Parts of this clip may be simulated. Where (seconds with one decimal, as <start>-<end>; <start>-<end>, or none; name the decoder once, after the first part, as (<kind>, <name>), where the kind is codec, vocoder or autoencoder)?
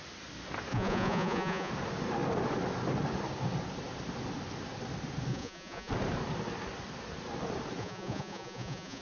0.7-1.7 (vocoder, Vocos); 5.3-5.9; 7.8-9.0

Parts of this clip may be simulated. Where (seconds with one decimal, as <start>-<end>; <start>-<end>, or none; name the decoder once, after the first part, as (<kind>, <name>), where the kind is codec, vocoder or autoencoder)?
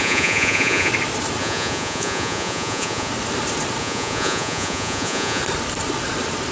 0.0-0.9 (vocoder, Vocos); 1.4-3.1; 3.8-5.4